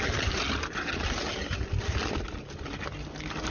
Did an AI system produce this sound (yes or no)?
no